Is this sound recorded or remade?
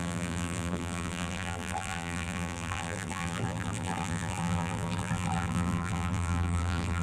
remade